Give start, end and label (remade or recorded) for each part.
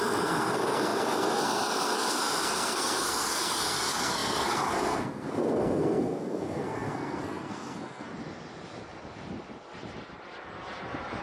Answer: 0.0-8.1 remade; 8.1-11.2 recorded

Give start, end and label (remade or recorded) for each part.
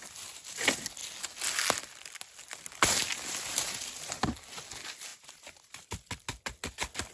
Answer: 0.0-5.1 recorded; 5.1-5.7 remade; 5.7-7.1 recorded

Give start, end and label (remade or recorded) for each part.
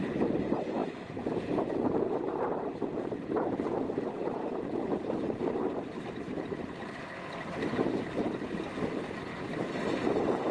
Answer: 0.0-10.5 recorded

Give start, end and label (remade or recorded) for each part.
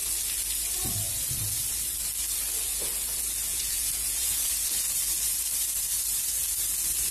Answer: 0.0-3.5 recorded; 3.5-4.5 remade; 4.5-7.1 recorded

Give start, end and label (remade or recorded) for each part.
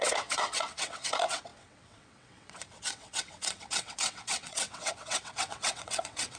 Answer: 0.0-6.4 remade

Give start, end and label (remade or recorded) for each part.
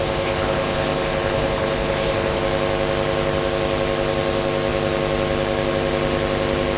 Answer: 0.0-2.4 remade; 2.4-6.8 recorded